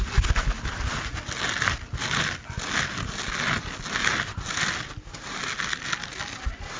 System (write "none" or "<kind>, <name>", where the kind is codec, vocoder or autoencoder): none